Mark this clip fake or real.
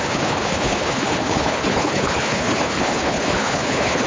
fake